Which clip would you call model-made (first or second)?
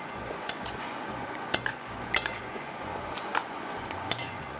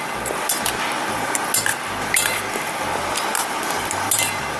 first